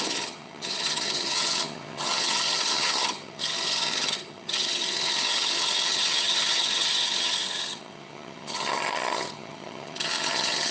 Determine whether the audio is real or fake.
fake